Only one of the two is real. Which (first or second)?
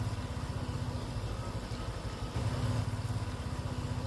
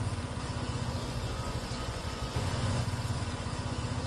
first